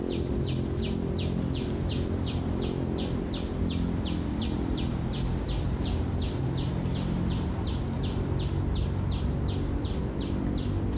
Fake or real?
fake